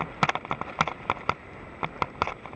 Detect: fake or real real